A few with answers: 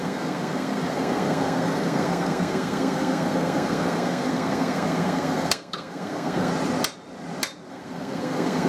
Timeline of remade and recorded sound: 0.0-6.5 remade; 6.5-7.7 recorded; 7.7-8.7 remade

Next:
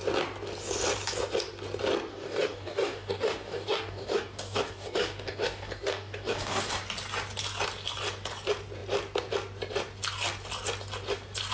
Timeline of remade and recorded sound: 0.0-2.1 recorded; 2.1-6.8 remade; 6.8-11.5 recorded

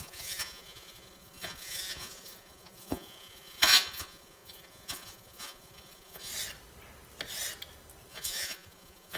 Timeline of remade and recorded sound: 0.0-6.3 remade; 6.3-8.1 recorded; 8.1-9.2 remade